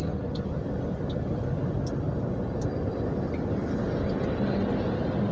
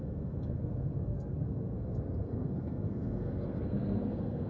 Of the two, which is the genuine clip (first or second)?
first